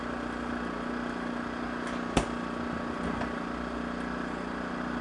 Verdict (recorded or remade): recorded